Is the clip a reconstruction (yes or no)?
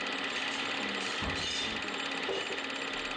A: no